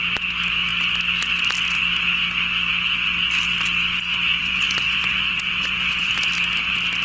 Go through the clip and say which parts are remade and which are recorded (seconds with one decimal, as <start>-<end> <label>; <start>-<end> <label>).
0.0-4.4 recorded; 4.4-6.1 remade; 6.1-7.0 recorded